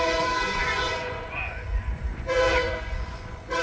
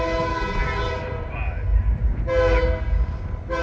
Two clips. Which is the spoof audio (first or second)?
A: first